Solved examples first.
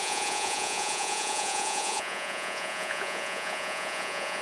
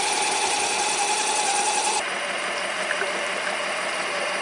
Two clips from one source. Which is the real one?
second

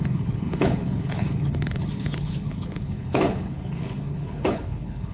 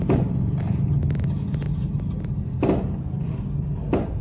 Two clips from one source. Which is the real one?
second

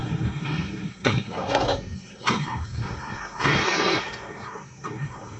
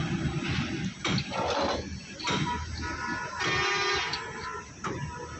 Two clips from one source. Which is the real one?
second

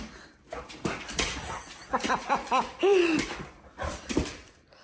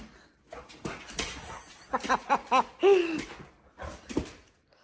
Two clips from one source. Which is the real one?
second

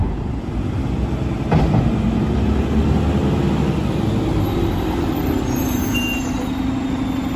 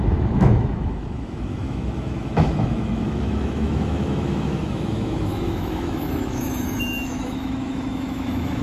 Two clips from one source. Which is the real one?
first